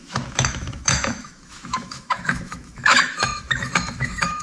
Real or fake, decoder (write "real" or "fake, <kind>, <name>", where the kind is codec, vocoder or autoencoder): fake, autoencoder, DAC-VAE